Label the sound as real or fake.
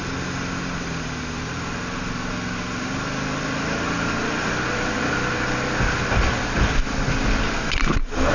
real